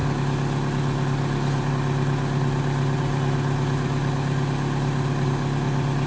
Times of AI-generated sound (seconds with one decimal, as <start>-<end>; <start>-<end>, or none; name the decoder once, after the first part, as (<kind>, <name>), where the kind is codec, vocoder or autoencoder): none